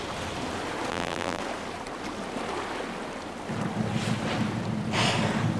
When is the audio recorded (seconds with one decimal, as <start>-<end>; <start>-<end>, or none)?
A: 0.0-0.9; 1.4-5.6